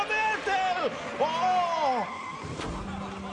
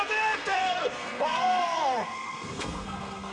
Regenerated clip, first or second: second